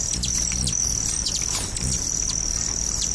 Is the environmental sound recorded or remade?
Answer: recorded